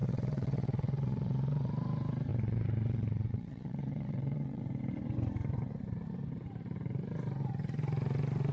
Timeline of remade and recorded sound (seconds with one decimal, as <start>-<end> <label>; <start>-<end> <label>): 0.0-1.7 remade; 1.7-2.3 recorded; 2.3-4.6 remade; 4.6-8.5 recorded